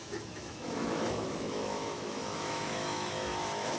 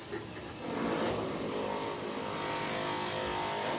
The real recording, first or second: second